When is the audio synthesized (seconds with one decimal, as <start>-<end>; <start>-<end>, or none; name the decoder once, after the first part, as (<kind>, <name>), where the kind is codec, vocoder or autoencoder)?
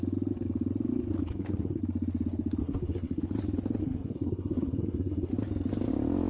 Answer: 1.3-1.8 (codec, SNAC); 2.6-3.2; 3.8-5.3